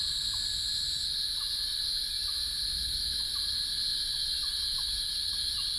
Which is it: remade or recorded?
recorded